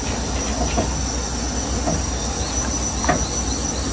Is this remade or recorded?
recorded